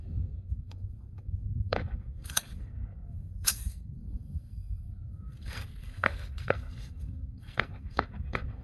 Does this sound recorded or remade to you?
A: remade